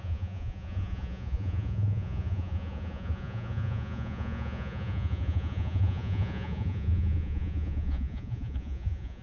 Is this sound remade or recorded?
remade